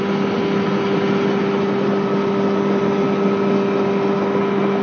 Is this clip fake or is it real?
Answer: real